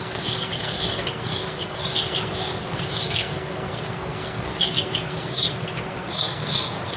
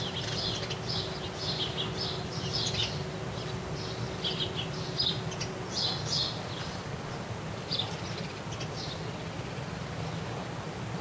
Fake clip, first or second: first